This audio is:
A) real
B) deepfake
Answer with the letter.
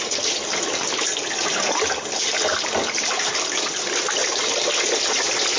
A